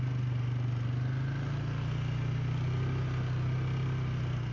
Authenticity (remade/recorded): recorded